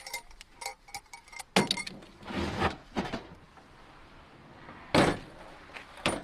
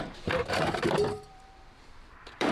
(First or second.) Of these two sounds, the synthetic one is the second